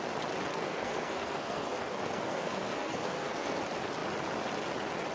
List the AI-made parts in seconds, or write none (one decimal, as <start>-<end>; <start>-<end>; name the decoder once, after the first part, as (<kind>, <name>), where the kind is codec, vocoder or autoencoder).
0.5-3.6 (codec, SNAC)